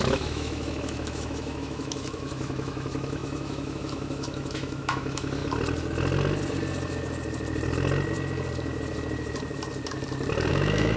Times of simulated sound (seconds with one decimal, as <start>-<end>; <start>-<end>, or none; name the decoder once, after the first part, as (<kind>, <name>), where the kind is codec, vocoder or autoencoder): 0.0-5.4 (autoencoder, DAC-VAE); 10.5-11.0